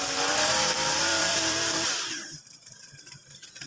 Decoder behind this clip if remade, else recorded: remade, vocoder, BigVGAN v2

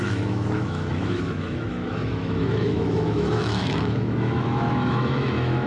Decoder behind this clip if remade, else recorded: remade, autoencoder, DAC-VAE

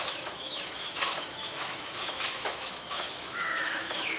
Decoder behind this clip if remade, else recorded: remade, autoencoder, DAC-VAE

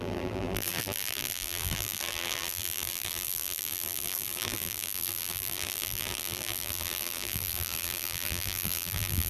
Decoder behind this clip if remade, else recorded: remade, vocoder, BigVGAN v2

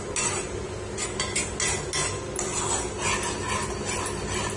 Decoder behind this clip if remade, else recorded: recorded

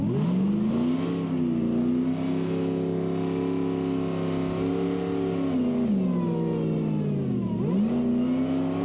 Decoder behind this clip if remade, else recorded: recorded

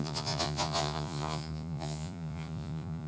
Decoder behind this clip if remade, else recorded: remade, vocoder, Vocos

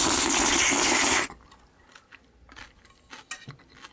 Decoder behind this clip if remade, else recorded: recorded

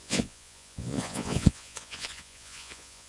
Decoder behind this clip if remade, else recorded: remade, vocoder, Vocos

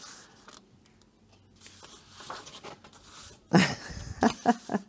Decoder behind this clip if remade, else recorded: recorded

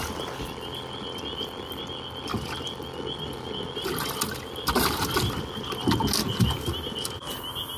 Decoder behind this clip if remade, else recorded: recorded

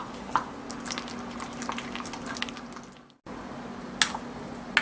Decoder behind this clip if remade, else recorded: recorded